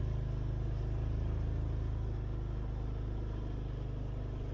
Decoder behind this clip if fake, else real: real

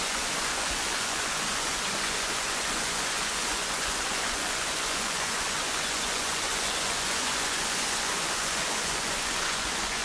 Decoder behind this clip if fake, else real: fake, vocoder, Vocos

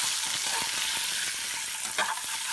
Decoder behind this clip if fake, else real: real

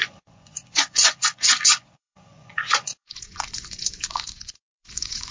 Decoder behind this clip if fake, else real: fake, vocoder, Vocos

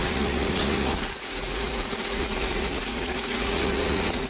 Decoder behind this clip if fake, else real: fake, vocoder, Vocos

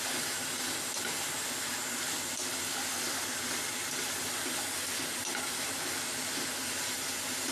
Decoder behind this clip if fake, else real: real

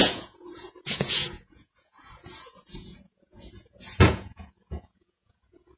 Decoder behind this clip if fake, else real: fake, vocoder, Vocos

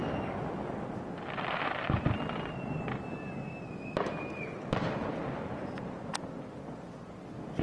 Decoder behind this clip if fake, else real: real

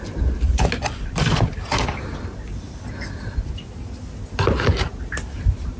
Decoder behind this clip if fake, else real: real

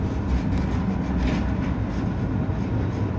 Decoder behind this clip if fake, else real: real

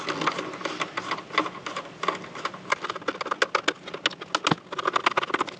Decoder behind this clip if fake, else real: real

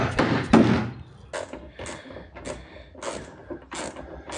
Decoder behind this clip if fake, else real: real